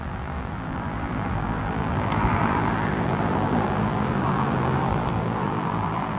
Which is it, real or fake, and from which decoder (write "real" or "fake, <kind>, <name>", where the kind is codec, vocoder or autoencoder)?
fake, vocoder, BigVGAN v2